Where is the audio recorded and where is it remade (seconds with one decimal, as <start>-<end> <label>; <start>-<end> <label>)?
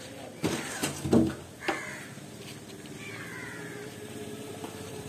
0.0-0.8 remade; 0.8-3.2 recorded; 3.2-5.1 remade